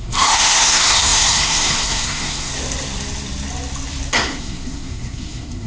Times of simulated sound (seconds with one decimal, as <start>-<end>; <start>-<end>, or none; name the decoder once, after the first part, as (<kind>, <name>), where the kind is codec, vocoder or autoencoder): 0.0-2.5 (codec, SNAC); 4.1-5.7